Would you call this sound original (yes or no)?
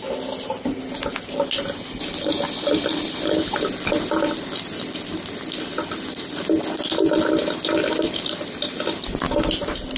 yes